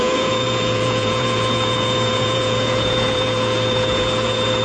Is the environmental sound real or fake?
fake